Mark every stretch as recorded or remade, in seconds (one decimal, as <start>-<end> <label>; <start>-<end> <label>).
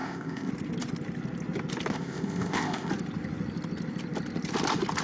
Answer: 0.0-0.5 remade; 0.5-1.9 recorded; 1.9-2.9 remade; 2.9-5.0 recorded